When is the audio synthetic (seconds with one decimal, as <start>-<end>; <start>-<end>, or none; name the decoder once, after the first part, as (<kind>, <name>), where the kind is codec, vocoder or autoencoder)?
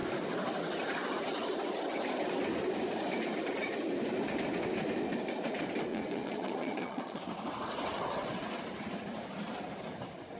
5.9-7.2 (vocoder, Vocos)